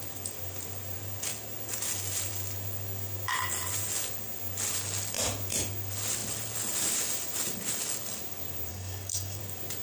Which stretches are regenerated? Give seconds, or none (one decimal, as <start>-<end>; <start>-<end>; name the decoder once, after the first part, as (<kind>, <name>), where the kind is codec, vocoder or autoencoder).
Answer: 8.7-9.4 (codec, DAC)